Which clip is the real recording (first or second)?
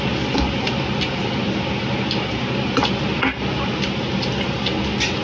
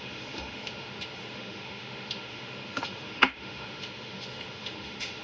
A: first